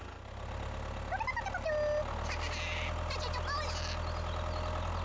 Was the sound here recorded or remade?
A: recorded